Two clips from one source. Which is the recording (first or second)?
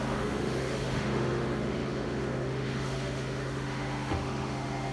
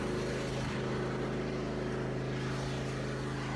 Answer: second